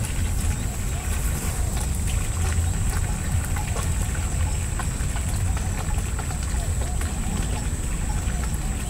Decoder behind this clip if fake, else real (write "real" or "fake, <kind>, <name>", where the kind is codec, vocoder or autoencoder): real